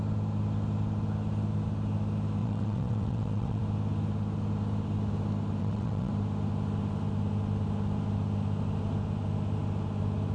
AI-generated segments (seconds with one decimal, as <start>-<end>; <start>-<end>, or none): 2.4-3.6; 5.6-6.1